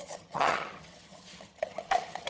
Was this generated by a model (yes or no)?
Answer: yes